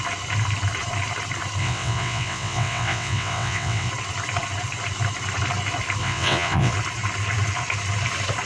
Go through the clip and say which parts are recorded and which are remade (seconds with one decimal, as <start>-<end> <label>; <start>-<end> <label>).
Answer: 0.0-1.6 recorded; 1.6-3.9 remade; 3.9-6.0 recorded; 6.0-6.7 remade; 6.7-8.5 recorded